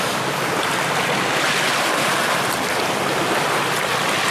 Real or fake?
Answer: real